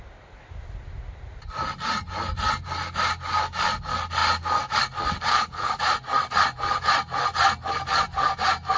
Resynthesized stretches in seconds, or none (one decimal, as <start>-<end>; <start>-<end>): 5.3-5.8

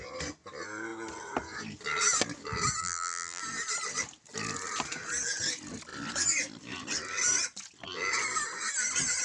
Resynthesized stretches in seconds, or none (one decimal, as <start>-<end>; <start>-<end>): 2.8-3.4